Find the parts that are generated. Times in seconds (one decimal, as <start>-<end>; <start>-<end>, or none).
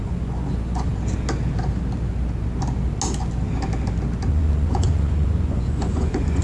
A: 0.0-0.9; 4.3-6.4